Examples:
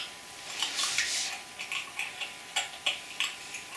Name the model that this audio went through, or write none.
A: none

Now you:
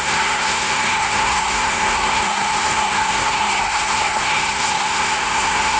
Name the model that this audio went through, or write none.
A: codec, SNAC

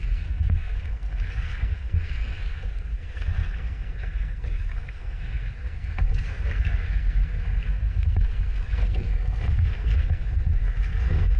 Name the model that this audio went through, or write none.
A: codec, SNAC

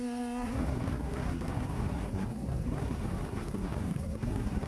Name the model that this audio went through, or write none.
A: codec, SNAC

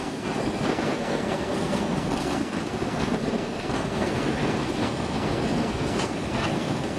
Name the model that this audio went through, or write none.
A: codec, SNAC